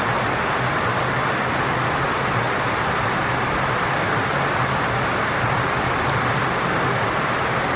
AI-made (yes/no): no